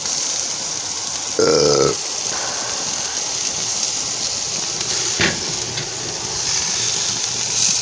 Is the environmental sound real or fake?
real